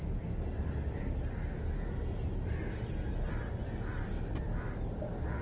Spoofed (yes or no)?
no